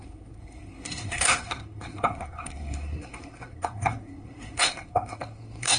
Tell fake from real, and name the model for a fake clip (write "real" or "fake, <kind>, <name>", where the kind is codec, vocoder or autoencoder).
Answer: fake, codec, SNAC